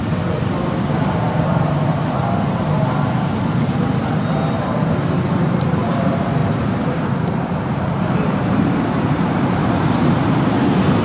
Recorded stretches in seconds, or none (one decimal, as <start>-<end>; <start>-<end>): 6.4-8.7